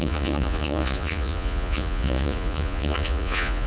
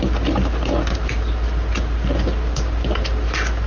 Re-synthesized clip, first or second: first